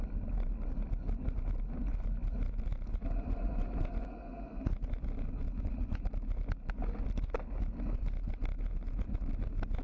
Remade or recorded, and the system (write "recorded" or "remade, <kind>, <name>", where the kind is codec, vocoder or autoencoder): recorded